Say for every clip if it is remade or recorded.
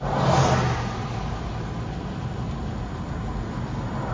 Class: recorded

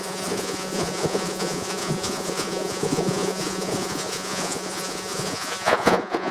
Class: remade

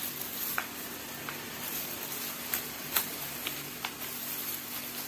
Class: recorded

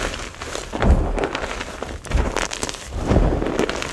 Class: recorded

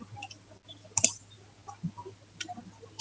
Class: recorded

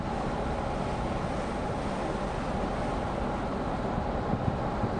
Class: recorded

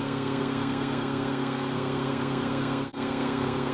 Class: remade